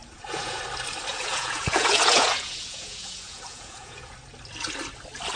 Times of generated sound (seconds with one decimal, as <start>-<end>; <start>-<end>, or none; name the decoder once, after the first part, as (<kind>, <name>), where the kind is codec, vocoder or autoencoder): 0.0-0.6 (vocoder, Vocos); 1.1-4.1